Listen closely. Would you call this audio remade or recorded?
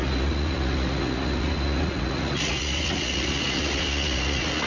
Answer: remade